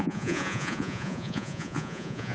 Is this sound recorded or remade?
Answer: remade